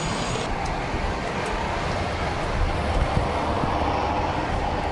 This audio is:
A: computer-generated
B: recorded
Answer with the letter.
B